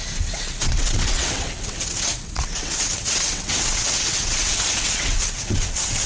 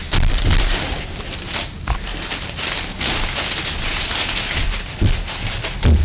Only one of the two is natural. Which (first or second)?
second